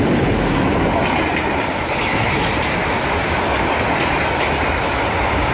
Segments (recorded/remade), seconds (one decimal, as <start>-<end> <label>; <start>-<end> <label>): 0.0-5.5 recorded